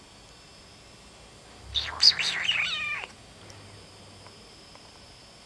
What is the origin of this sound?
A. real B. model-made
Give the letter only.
A